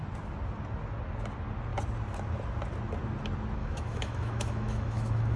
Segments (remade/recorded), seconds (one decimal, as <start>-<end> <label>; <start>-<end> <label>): 0.0-3.6 recorded; 3.6-5.4 remade